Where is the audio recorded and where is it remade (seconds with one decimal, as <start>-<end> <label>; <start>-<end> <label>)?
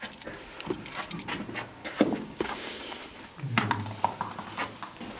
0.0-1.8 recorded; 1.8-2.9 remade; 2.9-5.2 recorded